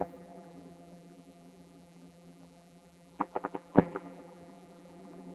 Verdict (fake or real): fake